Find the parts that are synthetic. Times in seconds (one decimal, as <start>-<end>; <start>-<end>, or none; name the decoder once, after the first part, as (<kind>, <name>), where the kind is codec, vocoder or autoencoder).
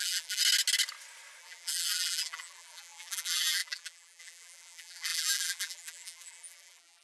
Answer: 0.0-0.4 (vocoder, BigVGAN v2); 1.4-7.0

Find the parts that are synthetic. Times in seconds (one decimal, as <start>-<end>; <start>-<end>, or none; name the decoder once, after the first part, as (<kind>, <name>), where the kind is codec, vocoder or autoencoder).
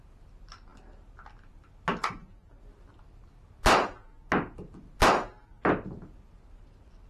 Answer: none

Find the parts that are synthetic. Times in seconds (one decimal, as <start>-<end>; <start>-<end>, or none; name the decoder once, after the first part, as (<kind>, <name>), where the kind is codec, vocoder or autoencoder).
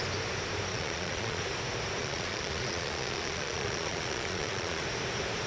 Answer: 0.7-1.4 (vocoder, Vocos); 2.0-4.8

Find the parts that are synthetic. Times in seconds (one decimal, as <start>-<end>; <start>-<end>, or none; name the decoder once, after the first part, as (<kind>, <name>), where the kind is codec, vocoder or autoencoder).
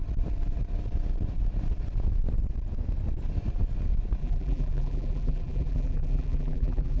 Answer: 4.2-7.0 (vocoder, BigVGAN v2)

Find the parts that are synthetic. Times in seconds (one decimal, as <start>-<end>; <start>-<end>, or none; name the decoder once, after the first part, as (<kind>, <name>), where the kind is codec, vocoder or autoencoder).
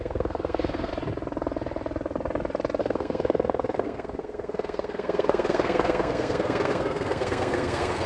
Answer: 0.0-0.9 (codec, SNAC); 2.8-8.1